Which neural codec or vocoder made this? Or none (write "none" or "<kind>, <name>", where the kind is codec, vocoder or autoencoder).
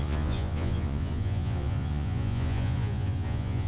vocoder, Vocos